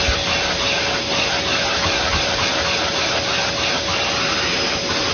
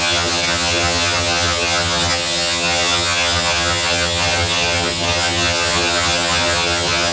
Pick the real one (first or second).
first